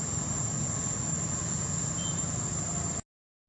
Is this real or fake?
real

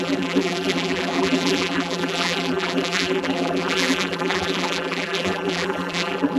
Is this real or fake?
fake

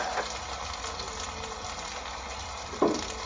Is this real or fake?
real